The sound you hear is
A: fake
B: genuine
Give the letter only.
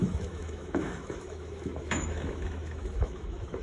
A